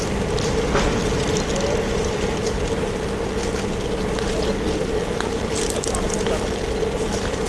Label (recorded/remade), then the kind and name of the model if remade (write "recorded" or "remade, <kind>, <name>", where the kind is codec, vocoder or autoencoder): recorded